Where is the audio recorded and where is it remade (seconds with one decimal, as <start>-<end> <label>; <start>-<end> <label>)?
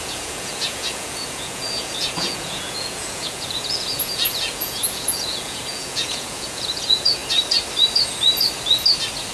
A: 0.0-7.2 remade; 7.2-9.3 recorded